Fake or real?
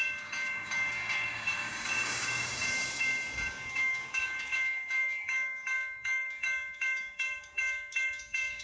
fake